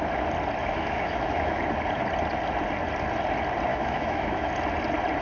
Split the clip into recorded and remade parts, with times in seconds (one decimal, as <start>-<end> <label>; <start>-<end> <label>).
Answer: 0.0-0.6 recorded; 0.6-1.6 remade; 1.6-3.7 recorded; 3.7-4.5 remade; 4.5-5.2 recorded